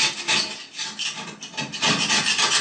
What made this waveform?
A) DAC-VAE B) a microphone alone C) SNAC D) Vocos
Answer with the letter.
B